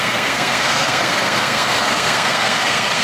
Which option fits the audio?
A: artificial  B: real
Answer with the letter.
A